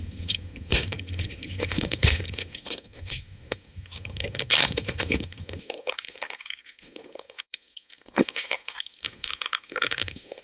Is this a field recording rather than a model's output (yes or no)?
no